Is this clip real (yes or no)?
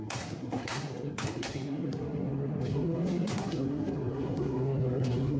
no